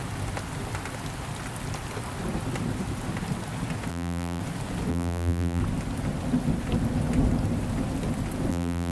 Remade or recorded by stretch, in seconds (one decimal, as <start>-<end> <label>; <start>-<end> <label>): 0.0-3.9 recorded; 3.9-4.4 remade; 4.4-4.9 recorded; 4.9-5.6 remade; 5.6-8.5 recorded; 8.5-8.9 remade